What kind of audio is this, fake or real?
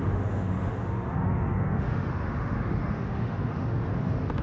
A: fake